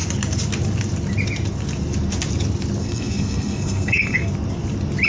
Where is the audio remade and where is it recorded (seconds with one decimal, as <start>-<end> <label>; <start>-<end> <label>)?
0.0-2.8 recorded; 2.8-4.3 remade; 4.3-5.1 recorded